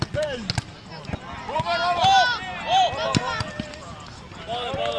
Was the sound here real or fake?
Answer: real